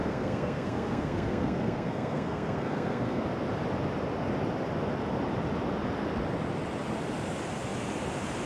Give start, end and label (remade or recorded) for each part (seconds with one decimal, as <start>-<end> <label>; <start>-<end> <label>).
0.0-3.2 remade; 3.2-8.5 recorded